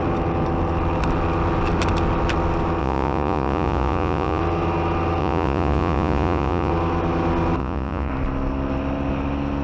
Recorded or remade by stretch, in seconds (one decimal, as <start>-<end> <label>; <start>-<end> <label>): 0.0-2.8 recorded; 2.8-4.4 remade; 4.4-5.2 recorded; 5.2-6.7 remade; 6.7-7.6 recorded; 7.6-8.1 remade; 8.1-9.6 recorded